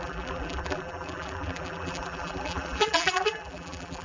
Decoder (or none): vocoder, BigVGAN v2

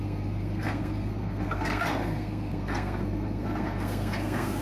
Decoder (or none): codec, SNAC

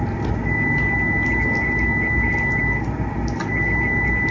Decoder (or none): none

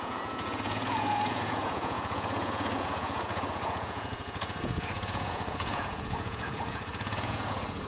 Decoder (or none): vocoder, Vocos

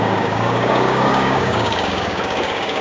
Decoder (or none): codec, DAC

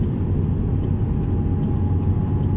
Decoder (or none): none